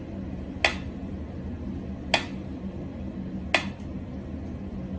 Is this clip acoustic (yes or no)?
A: yes